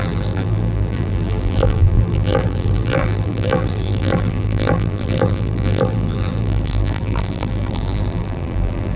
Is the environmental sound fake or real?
fake